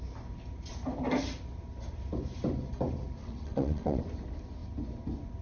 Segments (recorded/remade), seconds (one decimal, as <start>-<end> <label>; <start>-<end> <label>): 0.0-3.2 recorded; 3.2-4.0 remade; 4.0-5.4 recorded